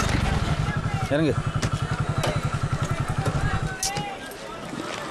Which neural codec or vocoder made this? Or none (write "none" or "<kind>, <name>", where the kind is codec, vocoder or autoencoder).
none